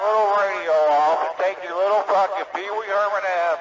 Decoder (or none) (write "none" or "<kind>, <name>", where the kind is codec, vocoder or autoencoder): none